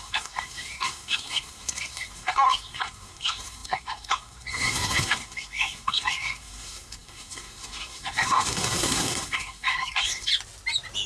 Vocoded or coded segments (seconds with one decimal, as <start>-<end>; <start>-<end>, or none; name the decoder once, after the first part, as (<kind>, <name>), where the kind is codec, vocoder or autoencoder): 0.0-10.3 (codec, SNAC)